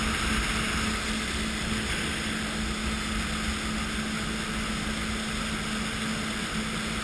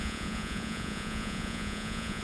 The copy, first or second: second